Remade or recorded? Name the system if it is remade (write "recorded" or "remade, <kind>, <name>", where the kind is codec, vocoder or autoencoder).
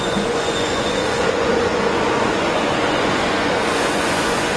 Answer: remade, vocoder, Vocos